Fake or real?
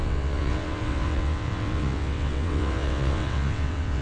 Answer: fake